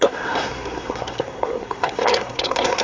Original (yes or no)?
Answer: no